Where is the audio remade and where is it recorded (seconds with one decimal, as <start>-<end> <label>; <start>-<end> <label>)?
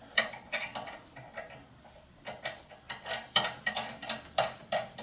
0.0-5.0 recorded